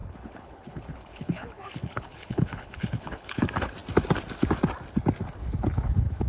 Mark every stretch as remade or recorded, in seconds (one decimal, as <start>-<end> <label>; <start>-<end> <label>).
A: 0.0-3.4 remade; 3.4-5.4 recorded; 5.4-6.3 remade